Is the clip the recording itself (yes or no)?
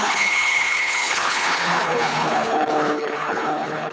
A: no